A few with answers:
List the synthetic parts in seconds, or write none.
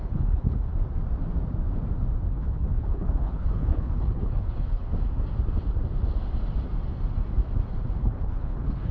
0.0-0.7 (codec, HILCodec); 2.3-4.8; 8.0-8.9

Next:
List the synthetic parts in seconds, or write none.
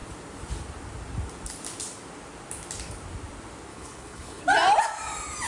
3.7-4.4 (codec, HILCodec)